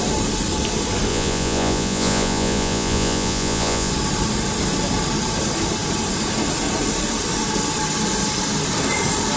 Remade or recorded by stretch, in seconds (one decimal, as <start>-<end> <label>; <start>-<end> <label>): 0.0-1.1 recorded; 1.1-3.9 remade; 3.9-9.4 recorded